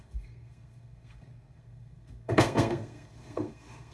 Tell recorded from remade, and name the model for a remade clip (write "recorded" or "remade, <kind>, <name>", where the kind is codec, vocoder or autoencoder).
remade, codec, SNAC